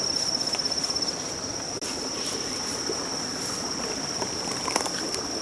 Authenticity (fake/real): real